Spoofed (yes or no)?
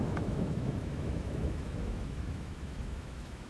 yes